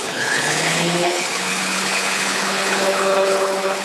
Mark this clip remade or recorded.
remade